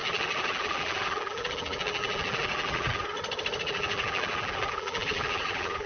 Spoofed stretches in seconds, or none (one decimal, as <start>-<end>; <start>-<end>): 0.0-3.0; 3.6-5.9